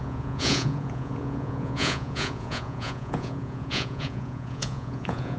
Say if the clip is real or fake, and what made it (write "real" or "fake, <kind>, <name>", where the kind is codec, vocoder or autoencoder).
fake, vocoder, Vocos